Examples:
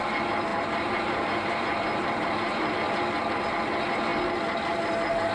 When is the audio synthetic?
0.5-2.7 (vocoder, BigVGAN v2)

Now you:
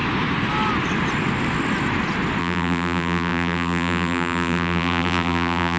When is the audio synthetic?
2.4-5.8 (vocoder, BigVGAN v2)